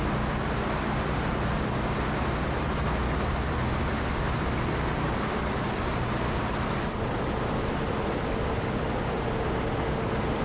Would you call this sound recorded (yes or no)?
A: yes